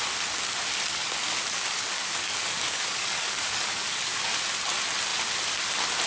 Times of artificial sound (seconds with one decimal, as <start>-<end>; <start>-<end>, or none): 0.9-4.4